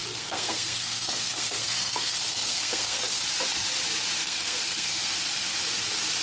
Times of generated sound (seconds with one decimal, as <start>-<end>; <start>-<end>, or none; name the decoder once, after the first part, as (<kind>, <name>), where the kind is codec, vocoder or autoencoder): 0.0-3.2 (codec, SNAC); 4.2-5.1